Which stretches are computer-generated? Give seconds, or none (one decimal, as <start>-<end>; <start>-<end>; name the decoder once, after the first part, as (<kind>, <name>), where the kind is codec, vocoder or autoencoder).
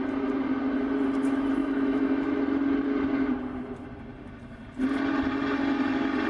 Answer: 1.6-2.4 (autoencoder, DAC-VAE)